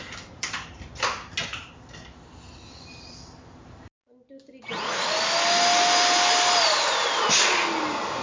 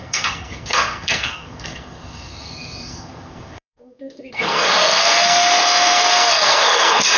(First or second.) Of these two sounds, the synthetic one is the second